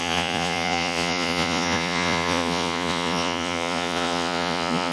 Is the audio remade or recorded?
remade